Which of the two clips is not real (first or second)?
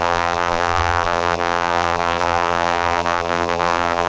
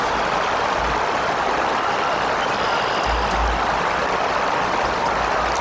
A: first